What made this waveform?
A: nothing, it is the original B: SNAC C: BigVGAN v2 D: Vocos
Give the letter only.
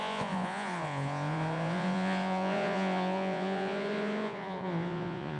D